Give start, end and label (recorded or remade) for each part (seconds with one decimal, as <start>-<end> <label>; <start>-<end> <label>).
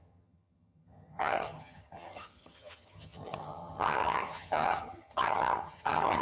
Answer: 0.0-6.2 remade